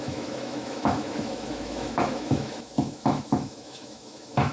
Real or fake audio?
fake